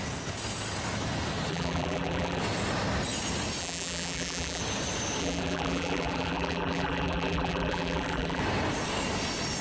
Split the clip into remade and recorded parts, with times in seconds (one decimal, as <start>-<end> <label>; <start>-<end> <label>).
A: 0.0-1.5 recorded; 1.5-2.4 remade; 2.4-3.6 recorded; 3.6-4.6 remade; 4.6-5.2 recorded; 5.2-8.4 remade; 8.4-9.6 recorded